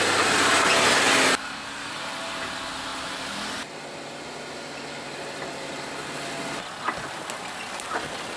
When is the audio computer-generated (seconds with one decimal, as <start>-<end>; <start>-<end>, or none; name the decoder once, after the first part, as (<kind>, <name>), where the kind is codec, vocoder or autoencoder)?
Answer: 1.4-1.9 (codec, SNAC)